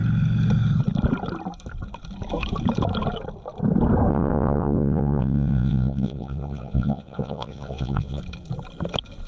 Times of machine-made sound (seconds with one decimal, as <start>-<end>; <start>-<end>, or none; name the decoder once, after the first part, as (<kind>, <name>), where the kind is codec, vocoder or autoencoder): 4.1-8.2 (vocoder, WaveNeXt)